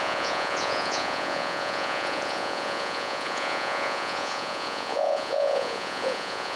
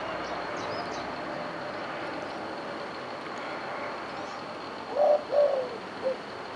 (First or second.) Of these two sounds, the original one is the second